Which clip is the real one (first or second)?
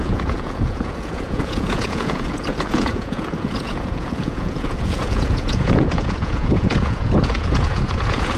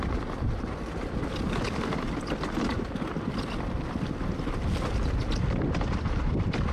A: second